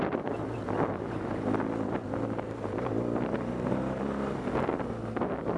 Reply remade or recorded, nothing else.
recorded